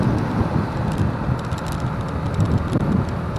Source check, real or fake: real